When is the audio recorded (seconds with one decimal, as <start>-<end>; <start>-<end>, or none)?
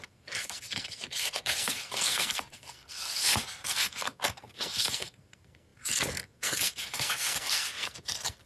none